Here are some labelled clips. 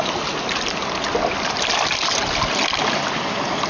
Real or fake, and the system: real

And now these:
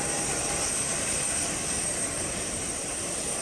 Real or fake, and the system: real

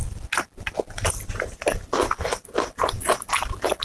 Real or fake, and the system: real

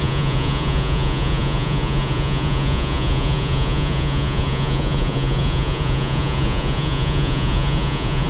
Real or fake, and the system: fake, vocoder, Vocos